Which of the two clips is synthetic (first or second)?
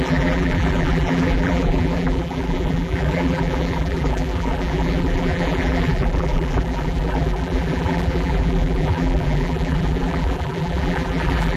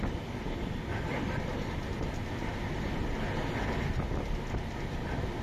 first